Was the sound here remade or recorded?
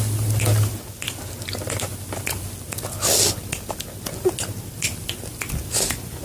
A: recorded